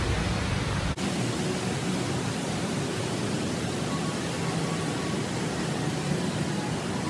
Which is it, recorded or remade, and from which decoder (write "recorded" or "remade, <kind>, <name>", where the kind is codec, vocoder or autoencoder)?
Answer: recorded